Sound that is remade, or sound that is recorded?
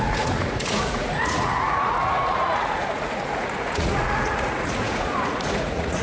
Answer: remade